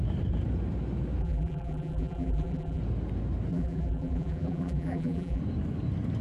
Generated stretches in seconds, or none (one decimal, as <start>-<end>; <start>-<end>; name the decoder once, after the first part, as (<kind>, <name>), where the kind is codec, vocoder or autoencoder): 1.2-2.8 (vocoder, BigVGAN v2); 3.5-5.4